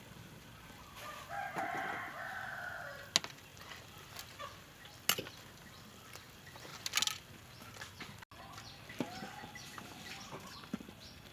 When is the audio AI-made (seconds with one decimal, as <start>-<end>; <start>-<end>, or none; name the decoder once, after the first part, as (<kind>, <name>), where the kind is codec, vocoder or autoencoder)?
none